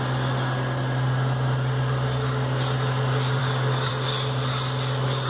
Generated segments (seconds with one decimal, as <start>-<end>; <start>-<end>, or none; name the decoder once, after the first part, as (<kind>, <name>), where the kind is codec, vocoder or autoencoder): 3.4-3.9 (codec, DAC)